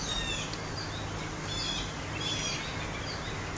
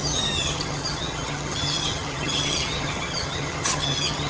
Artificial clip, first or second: second